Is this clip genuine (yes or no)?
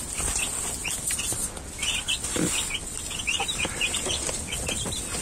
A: yes